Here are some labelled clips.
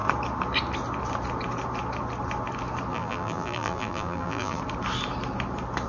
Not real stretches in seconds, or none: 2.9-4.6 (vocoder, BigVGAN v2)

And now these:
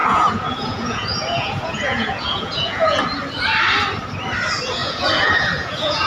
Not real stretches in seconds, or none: 0.0-3.0 (vocoder, Vocos); 4.8-6.1

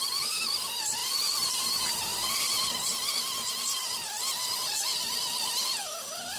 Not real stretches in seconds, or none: 1.0-1.5 (vocoder, BigVGAN v2); 2.1-2.7; 4.6-5.1

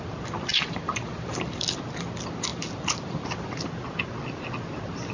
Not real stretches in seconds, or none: 0.5-1.6 (vocoder, BigVGAN v2); 2.5-3.6

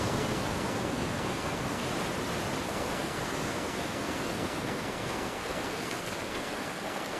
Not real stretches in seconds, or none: 0.0-1.8 (codec, SNAC); 2.6-7.2

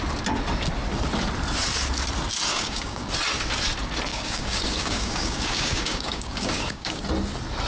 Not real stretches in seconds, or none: 2.5-3.1 (codec, DAC); 4.1-7.0

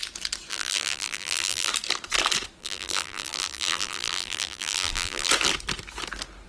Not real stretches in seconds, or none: 0.5-1.7 (vocoder, BigVGAN v2); 2.6-5.3